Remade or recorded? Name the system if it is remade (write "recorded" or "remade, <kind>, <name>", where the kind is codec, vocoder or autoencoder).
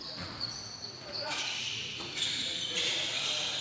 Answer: remade, vocoder, Vocos